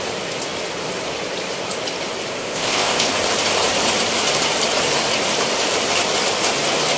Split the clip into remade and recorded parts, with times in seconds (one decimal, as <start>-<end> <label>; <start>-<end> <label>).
0.0-2.4 recorded; 2.4-3.1 remade; 3.1-7.0 recorded